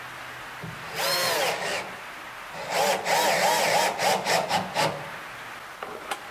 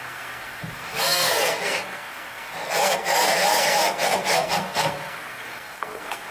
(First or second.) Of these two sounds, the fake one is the second